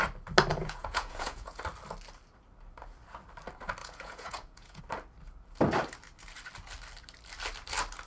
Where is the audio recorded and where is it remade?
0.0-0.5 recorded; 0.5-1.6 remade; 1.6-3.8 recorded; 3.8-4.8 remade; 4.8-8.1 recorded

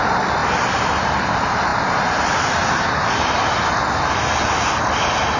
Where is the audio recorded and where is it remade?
0.0-5.4 recorded

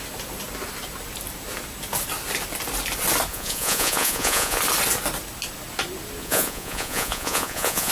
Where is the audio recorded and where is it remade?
0.0-3.3 recorded; 3.3-4.6 remade; 4.6-6.2 recorded; 6.2-7.9 remade

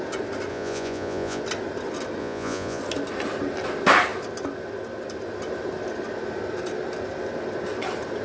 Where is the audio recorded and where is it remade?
0.0-0.5 recorded; 0.5-1.4 remade; 1.4-2.2 recorded; 2.2-2.8 remade; 2.8-8.2 recorded